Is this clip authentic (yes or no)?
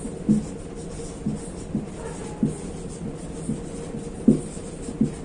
yes